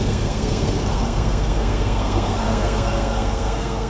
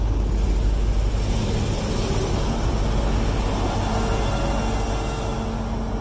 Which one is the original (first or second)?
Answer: second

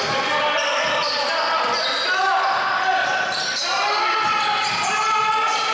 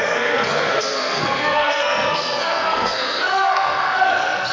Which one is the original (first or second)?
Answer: first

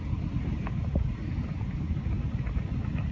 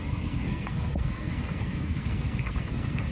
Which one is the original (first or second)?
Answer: first